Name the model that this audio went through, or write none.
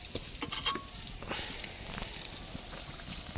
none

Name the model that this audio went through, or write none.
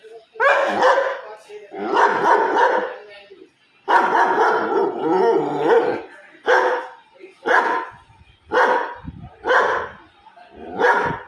none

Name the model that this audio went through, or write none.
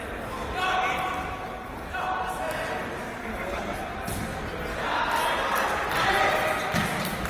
none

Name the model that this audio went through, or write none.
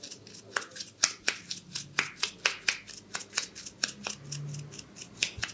none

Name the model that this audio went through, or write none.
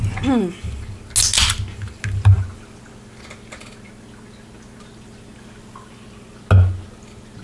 none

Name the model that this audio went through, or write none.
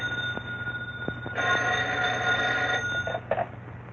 none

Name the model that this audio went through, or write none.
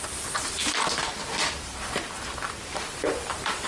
vocoder, BigVGAN v2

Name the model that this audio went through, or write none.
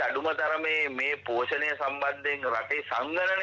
none